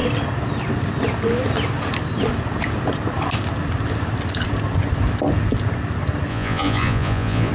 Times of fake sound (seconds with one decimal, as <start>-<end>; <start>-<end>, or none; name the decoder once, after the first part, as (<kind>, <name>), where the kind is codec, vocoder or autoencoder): 6.3-7.5 (vocoder, Vocos)